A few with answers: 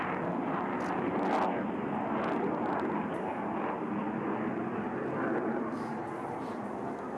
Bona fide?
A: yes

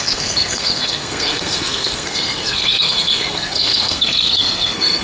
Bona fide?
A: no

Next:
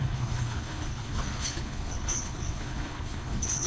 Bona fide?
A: no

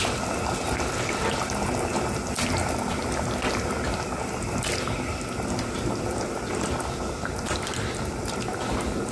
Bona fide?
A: no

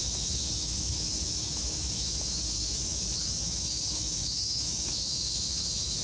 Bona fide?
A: no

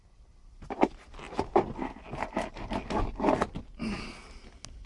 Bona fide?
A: yes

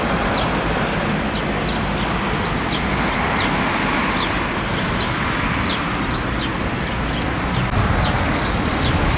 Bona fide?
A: yes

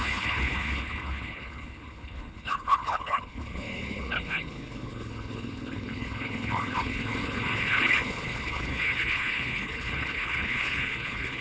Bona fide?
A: no